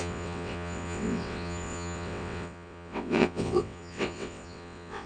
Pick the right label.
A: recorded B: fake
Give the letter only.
B